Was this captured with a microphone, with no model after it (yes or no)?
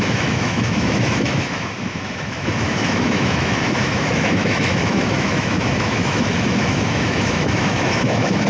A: no